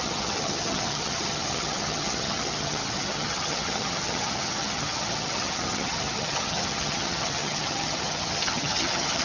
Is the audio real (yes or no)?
no